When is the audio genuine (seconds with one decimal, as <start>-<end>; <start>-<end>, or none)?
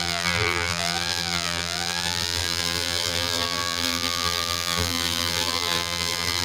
none